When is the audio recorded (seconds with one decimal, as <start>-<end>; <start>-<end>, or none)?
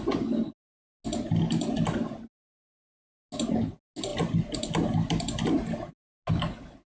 0.0-6.9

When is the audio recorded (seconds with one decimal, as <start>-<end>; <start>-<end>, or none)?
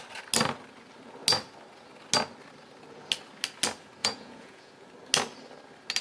0.0-4.0; 4.7-6.0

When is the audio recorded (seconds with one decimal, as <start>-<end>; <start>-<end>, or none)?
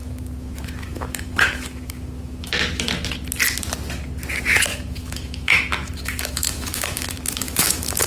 2.5-4.7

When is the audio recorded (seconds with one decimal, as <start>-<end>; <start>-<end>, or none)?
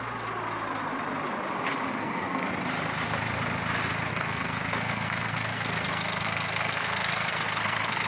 0.0-1.9; 2.5-4.1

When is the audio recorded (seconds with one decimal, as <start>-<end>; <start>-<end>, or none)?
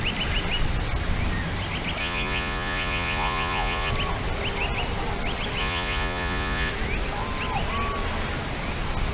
0.0-2.0; 3.9-5.6; 6.7-9.1